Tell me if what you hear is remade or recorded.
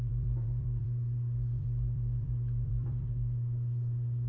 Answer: remade